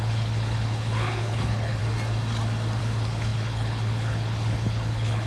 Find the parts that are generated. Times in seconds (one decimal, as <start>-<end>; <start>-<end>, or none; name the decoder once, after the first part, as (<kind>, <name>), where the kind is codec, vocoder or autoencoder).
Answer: 0.0-1.8 (codec, HILCodec); 2.8-5.3